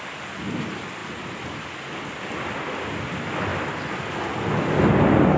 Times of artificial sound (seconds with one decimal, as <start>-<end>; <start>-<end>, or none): none